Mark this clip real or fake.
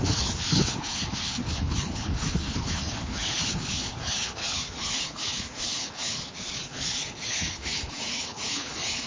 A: fake